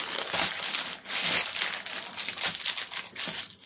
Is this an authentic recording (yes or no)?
yes